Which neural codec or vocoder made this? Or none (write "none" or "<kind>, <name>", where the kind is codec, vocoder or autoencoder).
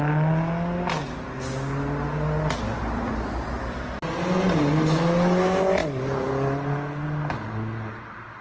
none